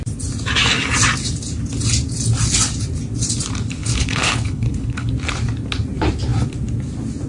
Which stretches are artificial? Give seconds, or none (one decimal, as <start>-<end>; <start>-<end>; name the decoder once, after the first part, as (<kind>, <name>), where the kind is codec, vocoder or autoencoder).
3.8-5.1 (codec, HILCodec)